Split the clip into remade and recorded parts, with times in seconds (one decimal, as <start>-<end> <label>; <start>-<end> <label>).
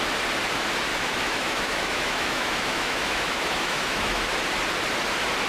0.0-0.9 recorded; 0.9-4.2 remade; 4.2-5.5 recorded